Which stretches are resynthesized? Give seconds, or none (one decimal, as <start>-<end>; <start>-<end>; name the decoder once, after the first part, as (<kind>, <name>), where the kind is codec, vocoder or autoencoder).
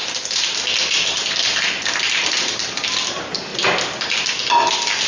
none